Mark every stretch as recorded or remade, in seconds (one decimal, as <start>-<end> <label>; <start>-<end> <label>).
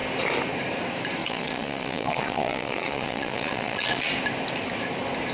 0.0-1.2 recorded; 1.2-4.1 remade; 4.1-5.3 recorded